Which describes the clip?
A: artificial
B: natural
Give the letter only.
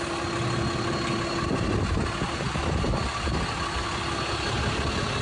B